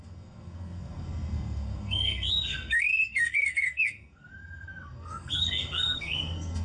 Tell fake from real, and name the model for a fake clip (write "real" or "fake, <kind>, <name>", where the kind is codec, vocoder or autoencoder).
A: fake, codec, SNAC